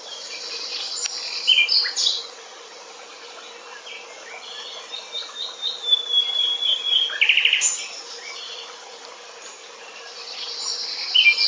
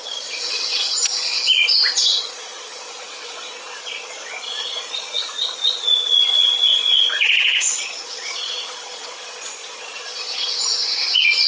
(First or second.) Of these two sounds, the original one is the first